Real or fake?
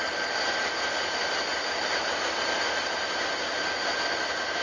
real